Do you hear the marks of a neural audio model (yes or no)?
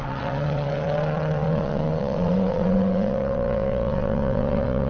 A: yes